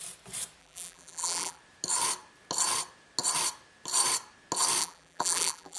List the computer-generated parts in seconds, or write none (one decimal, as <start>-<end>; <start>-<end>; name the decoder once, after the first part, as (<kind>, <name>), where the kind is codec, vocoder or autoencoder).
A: 0.6-1.6 (vocoder, BigVGAN v2); 4.8-5.8